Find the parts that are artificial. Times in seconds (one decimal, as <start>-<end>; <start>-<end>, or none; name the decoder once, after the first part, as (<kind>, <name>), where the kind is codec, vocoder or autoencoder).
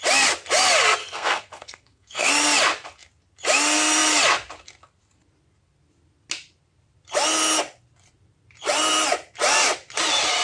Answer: 1.0-2.3 (codec, SNAC)